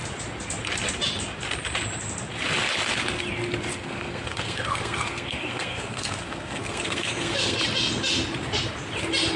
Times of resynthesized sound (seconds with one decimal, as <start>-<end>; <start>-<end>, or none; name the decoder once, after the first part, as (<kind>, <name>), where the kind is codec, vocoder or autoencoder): 3.7-7.6 (codec, SNAC)